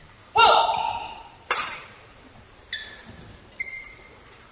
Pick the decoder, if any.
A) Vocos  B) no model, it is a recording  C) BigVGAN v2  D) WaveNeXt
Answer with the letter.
C